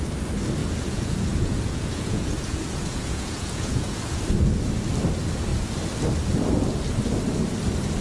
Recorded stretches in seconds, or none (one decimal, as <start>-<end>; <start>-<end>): 0.0-0.6; 4.2-8.0